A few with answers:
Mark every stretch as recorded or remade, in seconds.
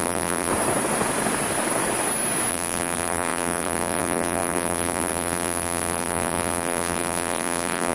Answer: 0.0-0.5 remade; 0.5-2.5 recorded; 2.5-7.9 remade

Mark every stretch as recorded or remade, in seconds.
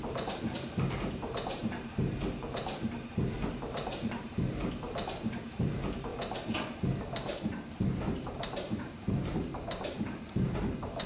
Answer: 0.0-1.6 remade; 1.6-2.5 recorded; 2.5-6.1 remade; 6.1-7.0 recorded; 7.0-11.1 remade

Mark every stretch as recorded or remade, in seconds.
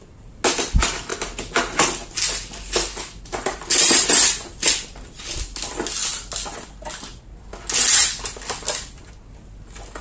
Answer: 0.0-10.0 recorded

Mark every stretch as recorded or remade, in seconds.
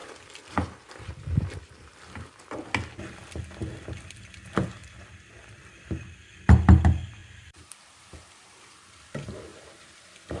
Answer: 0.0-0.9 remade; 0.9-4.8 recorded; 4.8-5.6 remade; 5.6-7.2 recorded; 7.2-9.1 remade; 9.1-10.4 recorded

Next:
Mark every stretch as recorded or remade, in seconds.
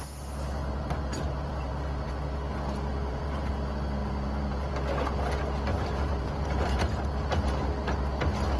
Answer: 0.0-0.6 recorded; 0.6-2.1 remade; 2.1-2.9 recorded; 2.9-3.5 remade; 3.5-4.0 recorded; 4.0-4.7 remade; 4.7-5.7 recorded; 5.7-7.1 remade; 7.1-8.6 recorded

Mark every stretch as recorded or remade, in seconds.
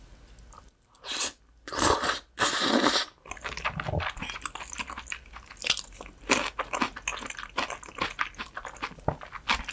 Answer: 0.0-9.7 recorded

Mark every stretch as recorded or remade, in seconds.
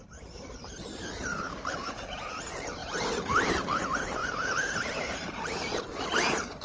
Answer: 0.0-6.6 remade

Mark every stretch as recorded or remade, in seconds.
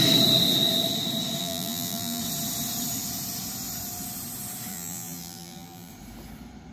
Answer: 0.0-1.4 recorded; 1.4-2.2 remade; 2.2-4.7 recorded; 4.7-5.9 remade; 5.9-6.7 recorded